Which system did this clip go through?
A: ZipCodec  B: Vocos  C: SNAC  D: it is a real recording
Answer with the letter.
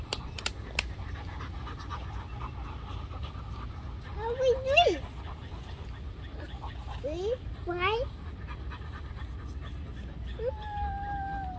D